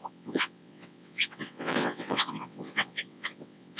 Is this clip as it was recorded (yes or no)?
no